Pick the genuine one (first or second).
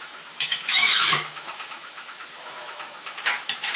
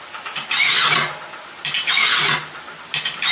second